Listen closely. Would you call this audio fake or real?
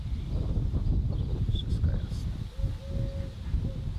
real